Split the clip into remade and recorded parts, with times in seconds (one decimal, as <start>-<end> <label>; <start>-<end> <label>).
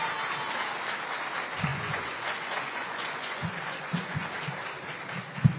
0.0-1.7 recorded; 1.7-4.3 remade; 4.3-5.6 recorded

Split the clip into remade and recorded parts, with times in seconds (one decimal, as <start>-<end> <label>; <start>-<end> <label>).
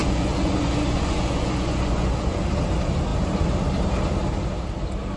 0.0-2.4 remade; 2.4-5.2 recorded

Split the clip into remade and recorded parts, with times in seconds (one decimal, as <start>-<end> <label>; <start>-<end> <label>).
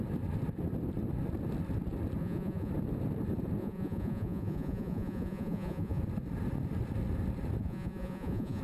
0.0-2.2 recorded; 2.2-2.7 remade; 2.7-3.6 recorded; 3.6-6.0 remade; 6.0-7.6 recorded; 7.6-8.6 remade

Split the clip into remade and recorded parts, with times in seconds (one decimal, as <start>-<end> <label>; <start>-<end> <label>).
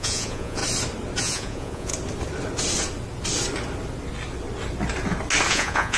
0.0-0.6 remade; 0.6-1.2 recorded; 1.2-1.9 remade; 1.9-5.5 recorded; 5.5-6.0 remade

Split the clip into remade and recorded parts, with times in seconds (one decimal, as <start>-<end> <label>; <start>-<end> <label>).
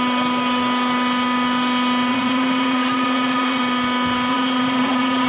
0.0-2.1 recorded; 2.1-3.6 remade; 3.6-4.3 recorded; 4.3-5.3 remade